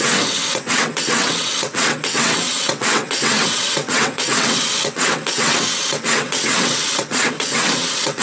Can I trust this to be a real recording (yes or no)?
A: no